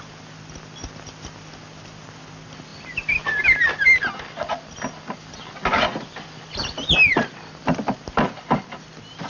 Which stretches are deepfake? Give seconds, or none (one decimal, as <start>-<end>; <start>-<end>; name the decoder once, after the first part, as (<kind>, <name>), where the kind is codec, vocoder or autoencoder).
none